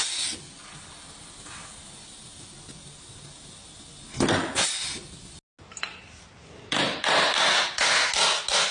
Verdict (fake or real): real